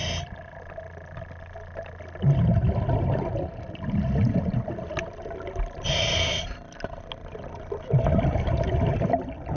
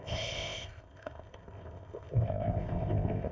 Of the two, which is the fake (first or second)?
second